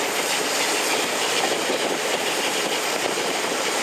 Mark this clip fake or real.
fake